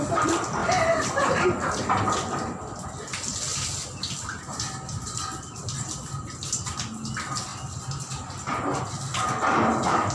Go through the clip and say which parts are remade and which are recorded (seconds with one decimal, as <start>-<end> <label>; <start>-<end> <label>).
0.0-0.6 recorded; 0.6-2.0 remade; 2.0-10.1 recorded